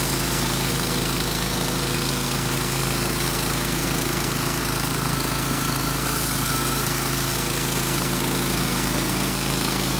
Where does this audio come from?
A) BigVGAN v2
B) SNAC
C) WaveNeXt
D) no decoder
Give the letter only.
B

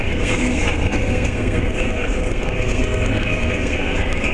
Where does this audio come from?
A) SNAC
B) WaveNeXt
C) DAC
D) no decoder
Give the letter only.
A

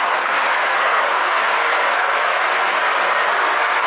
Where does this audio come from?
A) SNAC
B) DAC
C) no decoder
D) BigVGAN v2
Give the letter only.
A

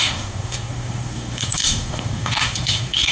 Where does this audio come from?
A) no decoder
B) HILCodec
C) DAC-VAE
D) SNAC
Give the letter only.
D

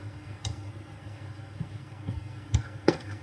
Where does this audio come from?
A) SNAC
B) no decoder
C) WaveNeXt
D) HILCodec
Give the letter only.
A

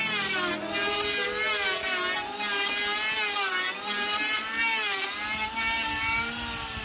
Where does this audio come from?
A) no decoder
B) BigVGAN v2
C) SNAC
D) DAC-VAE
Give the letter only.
A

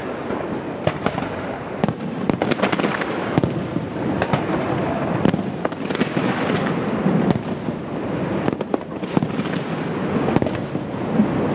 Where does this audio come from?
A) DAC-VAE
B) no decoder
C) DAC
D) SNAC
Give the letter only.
B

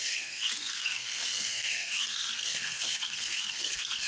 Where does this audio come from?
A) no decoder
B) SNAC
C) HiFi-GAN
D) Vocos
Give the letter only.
B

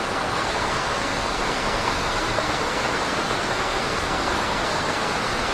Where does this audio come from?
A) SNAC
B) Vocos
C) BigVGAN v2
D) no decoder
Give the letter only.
A